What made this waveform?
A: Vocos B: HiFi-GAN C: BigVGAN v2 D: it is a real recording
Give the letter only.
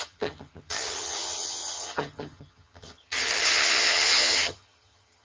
B